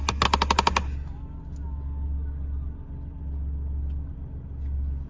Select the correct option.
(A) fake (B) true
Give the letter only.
B